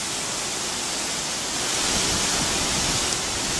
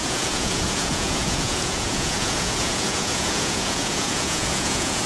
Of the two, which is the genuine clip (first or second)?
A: first